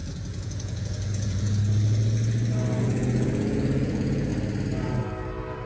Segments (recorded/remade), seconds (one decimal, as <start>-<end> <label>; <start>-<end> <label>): 0.0-1.6 remade; 1.6-2.8 recorded; 2.8-4.3 remade; 4.3-5.7 recorded